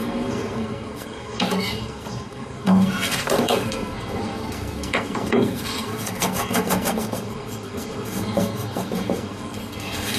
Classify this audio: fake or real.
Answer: fake